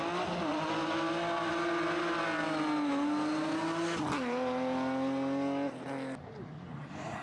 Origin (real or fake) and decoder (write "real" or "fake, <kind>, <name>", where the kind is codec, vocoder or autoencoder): real